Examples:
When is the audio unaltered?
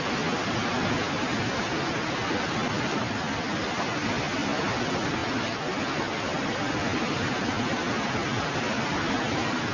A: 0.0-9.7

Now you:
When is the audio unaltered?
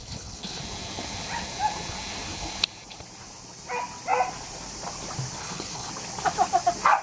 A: 0.6-5.4; 5.9-7.0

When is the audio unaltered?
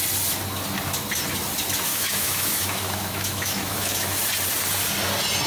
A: 0.0-1.9; 4.2-5.5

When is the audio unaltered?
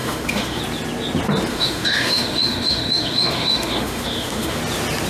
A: 0.6-1.5; 4.6-5.1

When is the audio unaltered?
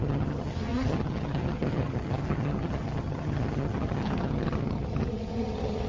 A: none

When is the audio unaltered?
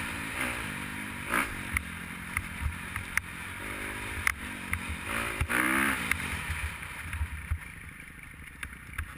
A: 4.3-5.5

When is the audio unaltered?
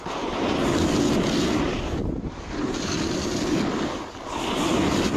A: 0.0-5.2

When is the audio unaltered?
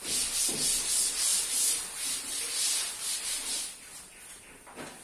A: 0.0-5.0